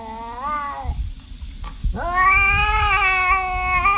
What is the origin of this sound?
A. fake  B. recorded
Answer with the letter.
B